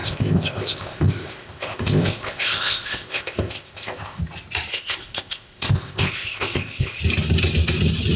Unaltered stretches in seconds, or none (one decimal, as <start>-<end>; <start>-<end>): 4.2-4.7; 7.0-8.2